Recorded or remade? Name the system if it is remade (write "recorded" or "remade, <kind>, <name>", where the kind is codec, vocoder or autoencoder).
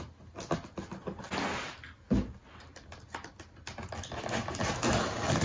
recorded